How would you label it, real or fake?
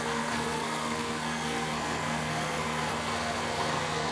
fake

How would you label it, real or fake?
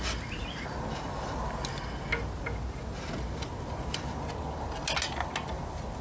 real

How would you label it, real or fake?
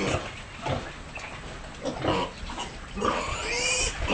real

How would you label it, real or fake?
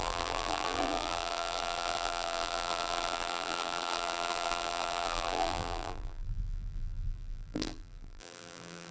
fake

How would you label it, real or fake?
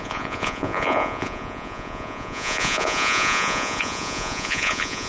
fake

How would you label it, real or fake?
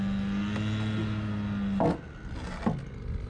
real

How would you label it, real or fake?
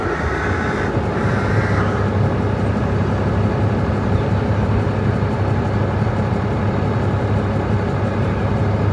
real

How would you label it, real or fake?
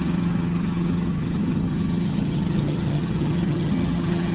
fake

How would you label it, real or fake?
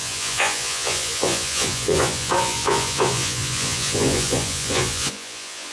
fake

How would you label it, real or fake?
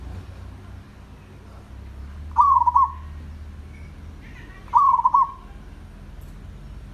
real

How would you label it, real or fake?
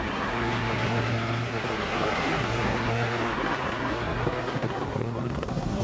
fake